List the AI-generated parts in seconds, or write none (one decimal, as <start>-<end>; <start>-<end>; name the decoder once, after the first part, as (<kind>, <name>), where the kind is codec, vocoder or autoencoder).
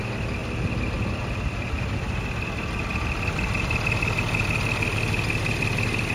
none